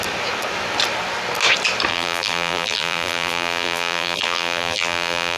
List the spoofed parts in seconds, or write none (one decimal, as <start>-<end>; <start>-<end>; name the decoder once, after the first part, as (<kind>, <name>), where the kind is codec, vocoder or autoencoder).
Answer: 1.9-5.4 (vocoder, BigVGAN v2)